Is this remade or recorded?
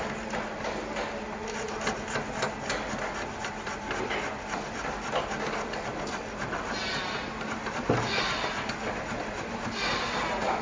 recorded